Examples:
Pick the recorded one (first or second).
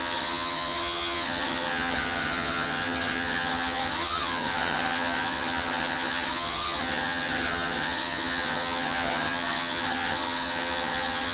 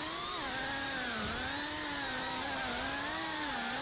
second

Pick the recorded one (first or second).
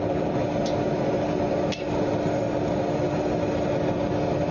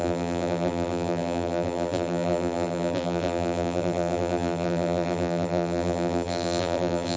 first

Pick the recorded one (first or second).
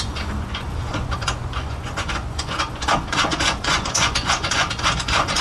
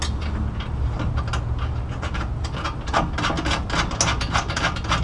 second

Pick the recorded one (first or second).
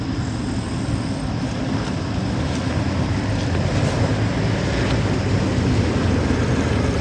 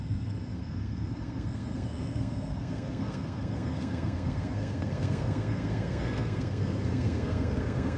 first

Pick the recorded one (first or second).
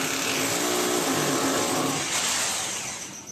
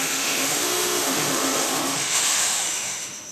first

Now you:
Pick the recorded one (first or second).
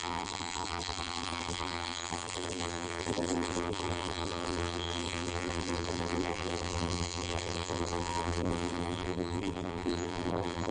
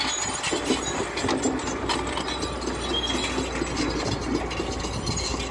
second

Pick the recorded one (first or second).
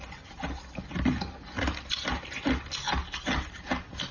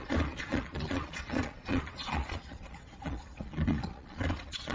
first